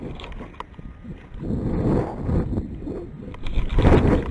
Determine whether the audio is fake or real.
real